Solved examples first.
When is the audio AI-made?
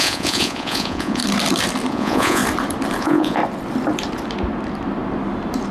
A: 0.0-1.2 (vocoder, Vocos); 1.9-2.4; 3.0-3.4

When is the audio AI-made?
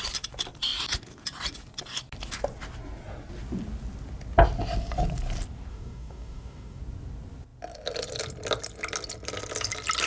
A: 5.7-6.8 (codec, DAC)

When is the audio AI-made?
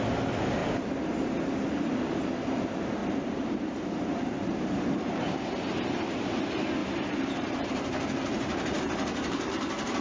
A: 0.6-1.3 (vocoder, BigVGAN v2); 3.0-5.2; 6.8-9.5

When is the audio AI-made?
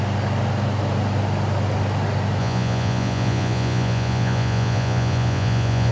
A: 2.4-5.9 (vocoder, Vocos)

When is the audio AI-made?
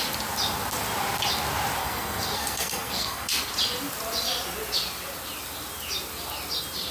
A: 1.8-3.5 (codec, SNAC)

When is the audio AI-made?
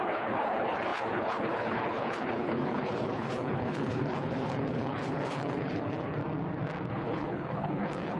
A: 0.0-6.2 (codec, HILCodec); 6.9-8.2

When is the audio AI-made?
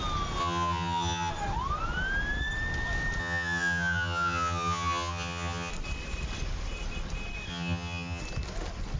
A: 0.4-1.3 (vocoder, HiFi-GAN); 3.2-5.7; 7.5-8.2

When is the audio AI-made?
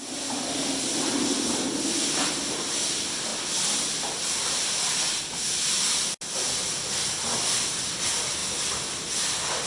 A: none